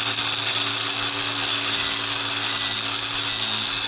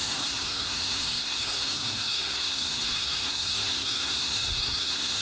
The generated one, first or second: second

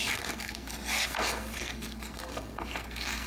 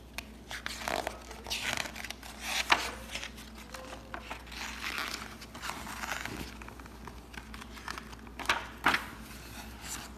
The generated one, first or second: first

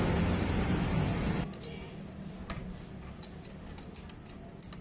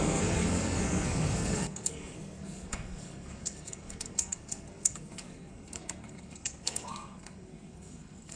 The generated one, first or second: second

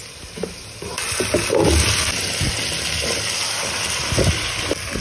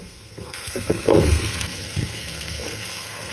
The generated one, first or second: second